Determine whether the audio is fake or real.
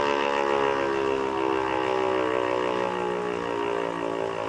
real